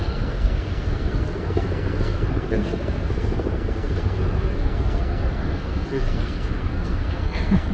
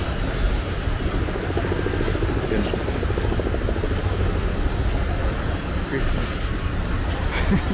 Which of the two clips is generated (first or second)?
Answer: first